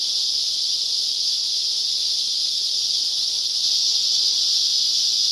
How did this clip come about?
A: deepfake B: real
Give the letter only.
A